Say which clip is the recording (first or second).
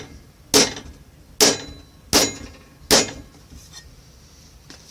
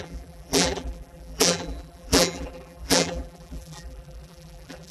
first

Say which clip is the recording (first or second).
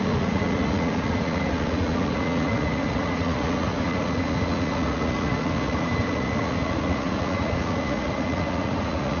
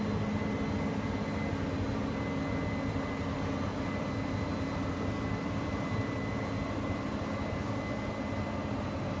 second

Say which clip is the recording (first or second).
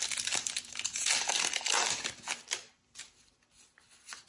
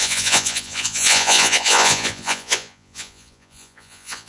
first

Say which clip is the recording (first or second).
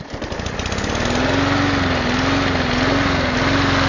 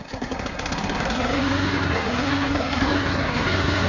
first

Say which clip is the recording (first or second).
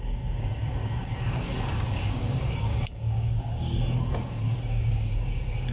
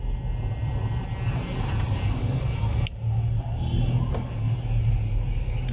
second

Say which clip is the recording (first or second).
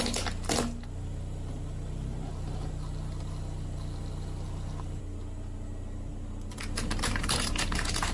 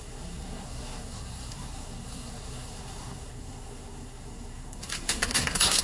first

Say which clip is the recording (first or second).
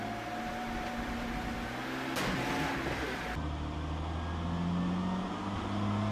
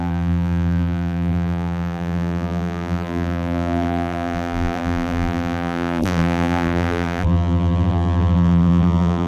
first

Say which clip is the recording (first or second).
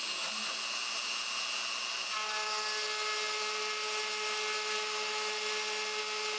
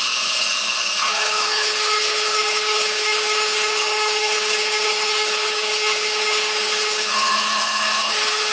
first